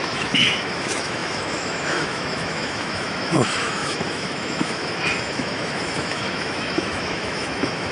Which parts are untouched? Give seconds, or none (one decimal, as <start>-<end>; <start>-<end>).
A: none